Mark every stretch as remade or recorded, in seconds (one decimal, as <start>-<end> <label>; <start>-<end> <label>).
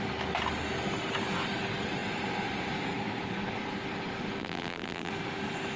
0.0-4.4 recorded; 4.4-5.1 remade; 5.1-5.8 recorded